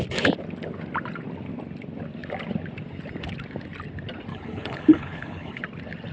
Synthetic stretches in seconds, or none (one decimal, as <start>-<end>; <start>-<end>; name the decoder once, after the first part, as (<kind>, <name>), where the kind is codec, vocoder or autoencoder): 4.3-5.6 (codec, HILCodec)